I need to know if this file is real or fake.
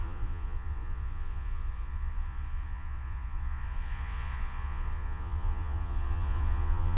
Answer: fake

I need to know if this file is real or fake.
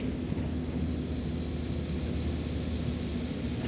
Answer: real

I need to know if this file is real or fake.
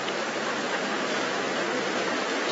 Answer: fake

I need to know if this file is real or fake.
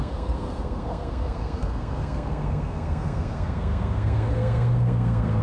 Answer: fake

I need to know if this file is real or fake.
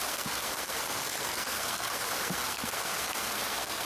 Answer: fake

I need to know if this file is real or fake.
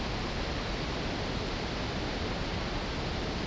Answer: real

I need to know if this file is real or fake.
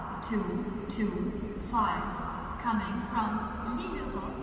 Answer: real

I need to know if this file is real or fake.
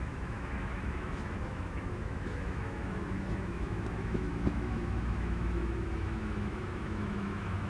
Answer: fake